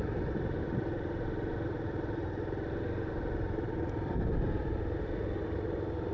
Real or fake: fake